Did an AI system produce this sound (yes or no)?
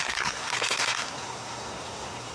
yes